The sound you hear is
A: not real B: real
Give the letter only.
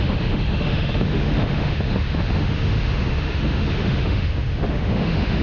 A